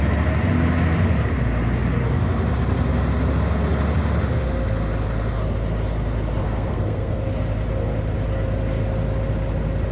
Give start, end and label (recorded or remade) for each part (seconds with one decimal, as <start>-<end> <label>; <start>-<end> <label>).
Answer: 0.0-6.4 recorded; 6.4-7.2 remade; 7.2-9.9 recorded